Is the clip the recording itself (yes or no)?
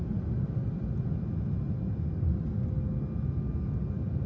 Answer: yes